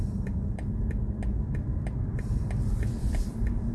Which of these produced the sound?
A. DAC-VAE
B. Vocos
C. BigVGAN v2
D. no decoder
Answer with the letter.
C